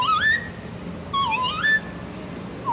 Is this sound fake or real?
real